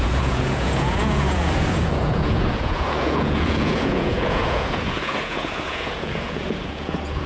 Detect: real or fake fake